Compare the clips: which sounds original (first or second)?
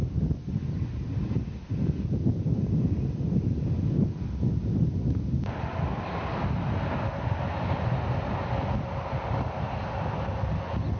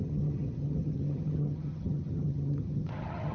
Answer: first